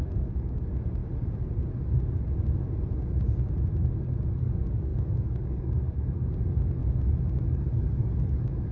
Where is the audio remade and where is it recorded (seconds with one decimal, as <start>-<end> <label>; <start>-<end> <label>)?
0.0-1.0 remade; 1.0-4.3 recorded; 4.3-6.8 remade; 6.8-7.4 recorded; 7.4-8.7 remade